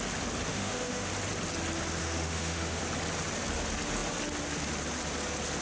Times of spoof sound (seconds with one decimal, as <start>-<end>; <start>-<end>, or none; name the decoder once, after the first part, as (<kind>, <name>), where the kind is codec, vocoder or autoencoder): 0.5-1.1 (autoencoder, DAC-VAE); 2.0-2.8

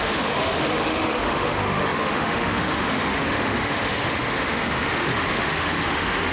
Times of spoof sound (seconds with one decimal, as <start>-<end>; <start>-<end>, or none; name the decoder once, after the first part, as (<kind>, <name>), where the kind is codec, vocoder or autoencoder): 0.0-6.3 (autoencoder, DAC-VAE)